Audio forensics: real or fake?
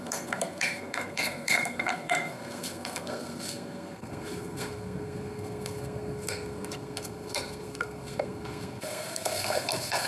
fake